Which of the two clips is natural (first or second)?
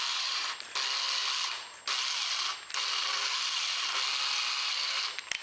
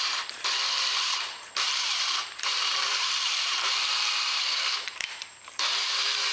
first